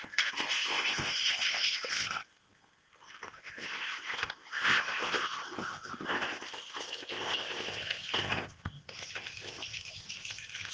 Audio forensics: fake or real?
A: fake